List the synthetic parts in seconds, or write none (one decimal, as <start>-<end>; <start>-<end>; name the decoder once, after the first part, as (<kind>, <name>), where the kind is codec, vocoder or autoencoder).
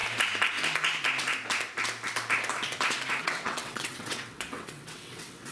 3.2-5.5 (vocoder, WaveNeXt)